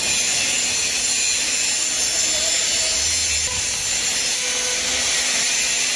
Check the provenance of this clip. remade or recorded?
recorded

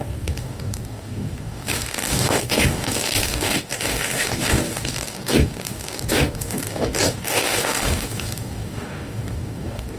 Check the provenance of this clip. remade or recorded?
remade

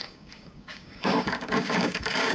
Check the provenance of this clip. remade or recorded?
remade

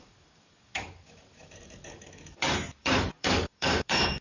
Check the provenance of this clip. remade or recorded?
remade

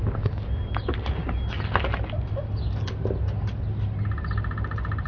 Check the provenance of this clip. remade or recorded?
recorded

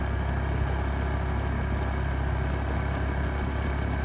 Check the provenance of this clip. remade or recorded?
recorded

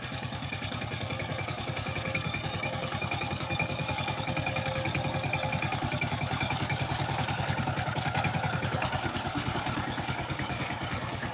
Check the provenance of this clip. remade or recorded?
remade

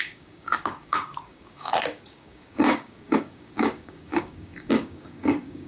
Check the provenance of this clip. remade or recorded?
remade